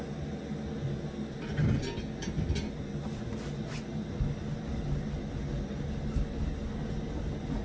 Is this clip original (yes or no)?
yes